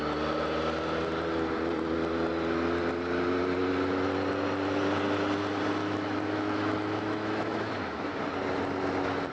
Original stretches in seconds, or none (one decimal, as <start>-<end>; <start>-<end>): 0.0-5.8; 8.2-9.3